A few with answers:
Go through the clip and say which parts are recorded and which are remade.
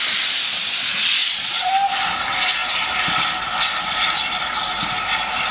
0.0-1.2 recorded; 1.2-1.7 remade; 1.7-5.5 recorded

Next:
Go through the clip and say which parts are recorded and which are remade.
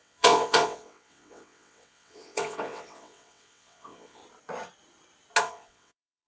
0.0-4.2 remade; 4.2-5.4 recorded; 5.4-6.3 remade